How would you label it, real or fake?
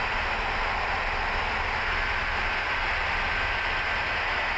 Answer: real